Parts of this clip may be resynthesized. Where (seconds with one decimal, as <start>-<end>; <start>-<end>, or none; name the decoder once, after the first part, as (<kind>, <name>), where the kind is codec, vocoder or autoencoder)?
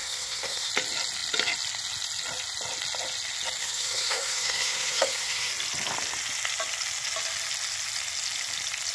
0.0-0.7 (codec, SNAC); 3.6-5.5